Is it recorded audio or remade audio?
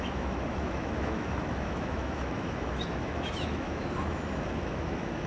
remade